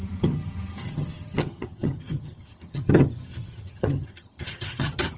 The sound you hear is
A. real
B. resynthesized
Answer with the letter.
B